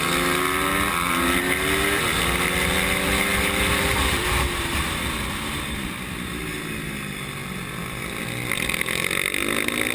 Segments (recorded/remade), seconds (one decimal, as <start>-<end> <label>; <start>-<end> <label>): 0.0-3.1 recorded; 3.1-4.8 remade; 4.8-9.9 recorded